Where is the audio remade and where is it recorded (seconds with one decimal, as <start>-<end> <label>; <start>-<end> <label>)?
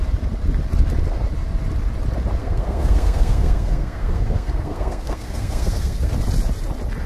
0.0-2.4 recorded; 2.4-6.1 remade; 6.1-7.1 recorded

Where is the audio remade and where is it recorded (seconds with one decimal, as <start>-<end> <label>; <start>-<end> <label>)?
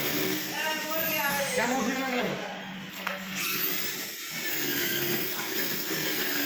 0.0-0.5 remade; 0.5-1.3 recorded; 1.3-2.3 remade; 2.3-2.9 recorded; 2.9-3.6 remade; 3.6-4.5 recorded; 4.5-6.5 remade